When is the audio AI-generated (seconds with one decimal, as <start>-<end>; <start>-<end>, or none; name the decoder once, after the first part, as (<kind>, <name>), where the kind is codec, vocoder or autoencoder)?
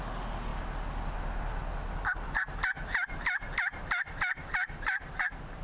none